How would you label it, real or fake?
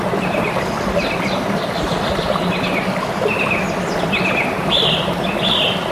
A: real